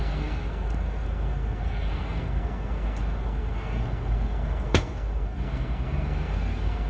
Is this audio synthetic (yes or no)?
yes